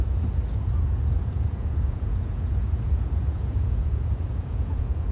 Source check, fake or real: fake